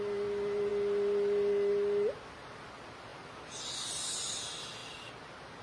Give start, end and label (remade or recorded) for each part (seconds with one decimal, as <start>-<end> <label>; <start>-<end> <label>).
0.0-5.6 recorded